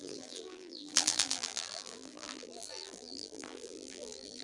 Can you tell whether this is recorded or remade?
remade